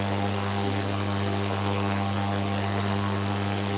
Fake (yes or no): yes